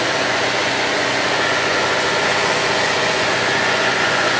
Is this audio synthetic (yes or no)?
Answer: yes